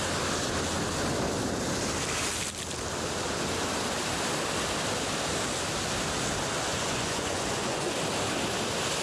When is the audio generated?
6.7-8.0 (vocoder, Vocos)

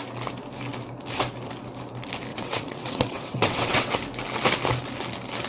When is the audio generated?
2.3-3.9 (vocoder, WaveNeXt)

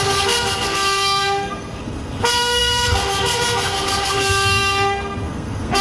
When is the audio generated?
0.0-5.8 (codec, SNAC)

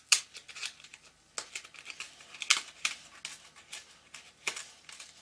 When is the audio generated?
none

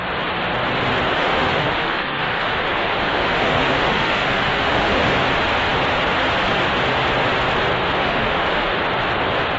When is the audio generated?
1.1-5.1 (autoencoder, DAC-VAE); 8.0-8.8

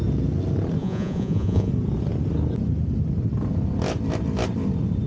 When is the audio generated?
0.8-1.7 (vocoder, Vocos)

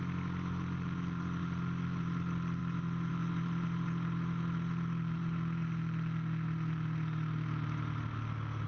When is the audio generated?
none